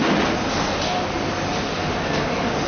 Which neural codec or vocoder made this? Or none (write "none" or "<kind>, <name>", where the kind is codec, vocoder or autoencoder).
none